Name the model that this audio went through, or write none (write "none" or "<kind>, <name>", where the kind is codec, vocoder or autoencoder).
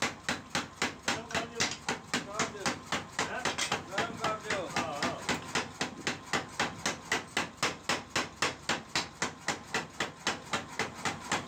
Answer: none